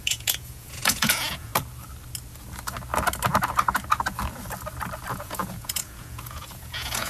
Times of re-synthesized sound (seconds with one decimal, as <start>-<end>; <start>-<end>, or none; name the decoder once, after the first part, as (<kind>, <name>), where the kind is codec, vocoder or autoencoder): 0.0-1.5 (vocoder, Vocos); 5.1-7.1